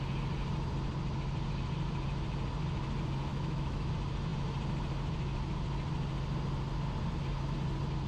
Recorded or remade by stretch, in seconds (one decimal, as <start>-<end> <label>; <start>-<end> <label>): 0.0-3.3 recorded; 3.3-3.9 remade; 3.9-8.1 recorded